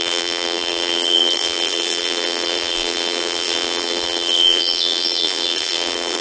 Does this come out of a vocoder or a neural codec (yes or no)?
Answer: yes